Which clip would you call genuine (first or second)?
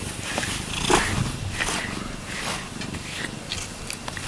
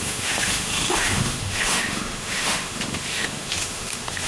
first